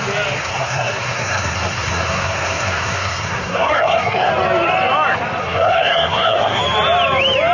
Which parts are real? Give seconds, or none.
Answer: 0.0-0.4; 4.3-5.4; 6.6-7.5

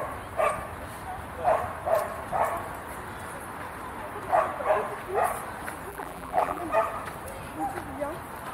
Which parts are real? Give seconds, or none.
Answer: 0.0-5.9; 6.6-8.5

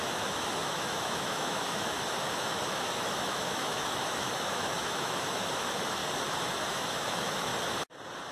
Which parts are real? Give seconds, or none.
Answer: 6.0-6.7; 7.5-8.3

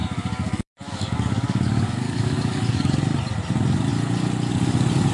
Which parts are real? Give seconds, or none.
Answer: 3.0-5.1